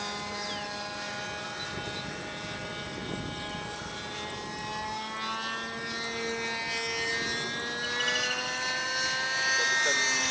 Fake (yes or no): no